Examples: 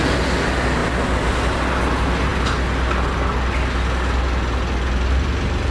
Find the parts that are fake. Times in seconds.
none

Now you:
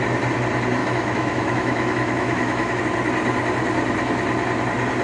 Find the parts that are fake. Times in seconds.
0.8-2.8 (autoencoder, DAC-VAE)

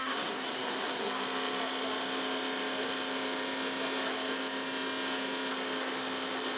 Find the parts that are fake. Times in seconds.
0.0-1.1 (codec, SNAC)

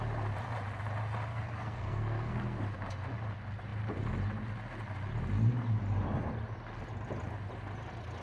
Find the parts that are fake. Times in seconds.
1.3-2.6 (codec, SNAC)

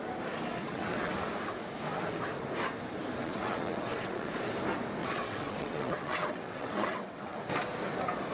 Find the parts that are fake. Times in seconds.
0.6-1.1 (vocoder, WaveNeXt); 3.2-4.3; 5.0-7.4

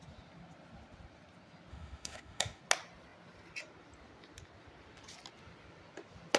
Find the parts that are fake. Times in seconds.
1.7-2.6 (autoencoder, DAC-VAE)

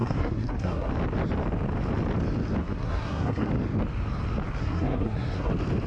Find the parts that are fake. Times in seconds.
0.0-0.9 (codec, SNAC); 2.6-3.5; 4.6-5.5

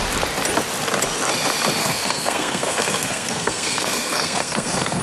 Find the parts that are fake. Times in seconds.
1.8-5.0 (codec, SNAC)